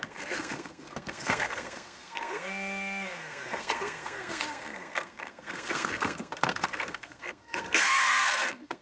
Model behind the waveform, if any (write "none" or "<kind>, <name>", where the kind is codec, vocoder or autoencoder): codec, SNAC